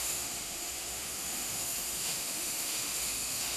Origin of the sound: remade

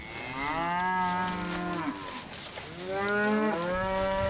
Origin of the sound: recorded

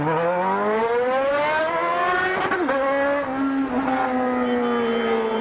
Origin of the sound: recorded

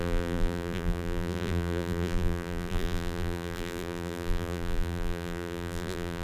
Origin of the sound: remade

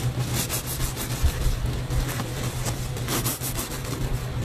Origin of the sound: recorded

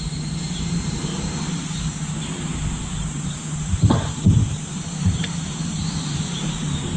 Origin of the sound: remade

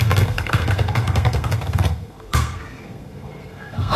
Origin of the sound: remade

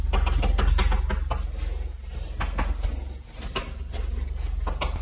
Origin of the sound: recorded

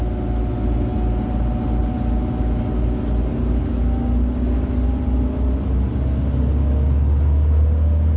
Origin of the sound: recorded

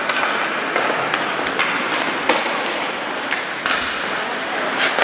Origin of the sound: recorded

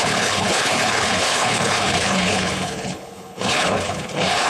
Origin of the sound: remade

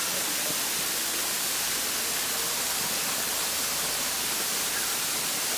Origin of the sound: recorded